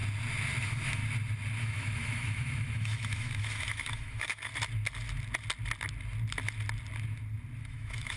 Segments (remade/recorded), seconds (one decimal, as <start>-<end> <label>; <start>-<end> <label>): 0.0-0.6 recorded; 0.6-1.0 remade; 1.0-1.6 recorded; 1.6-4.5 remade; 4.5-7.6 recorded; 7.6-8.2 remade